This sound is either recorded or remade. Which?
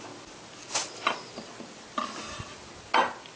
recorded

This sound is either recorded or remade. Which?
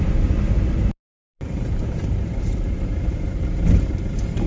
remade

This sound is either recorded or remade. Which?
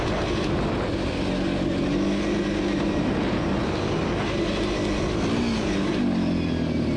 recorded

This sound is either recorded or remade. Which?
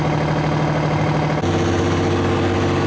recorded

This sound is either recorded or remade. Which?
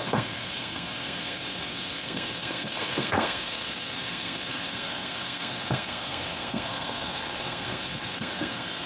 remade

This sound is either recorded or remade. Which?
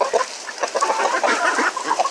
recorded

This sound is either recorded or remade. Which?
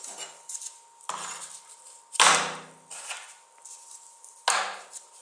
recorded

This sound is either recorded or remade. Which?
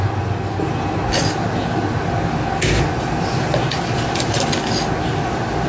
recorded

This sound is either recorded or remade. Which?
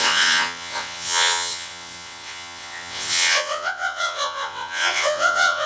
remade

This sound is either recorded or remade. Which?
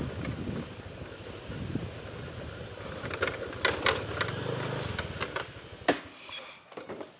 recorded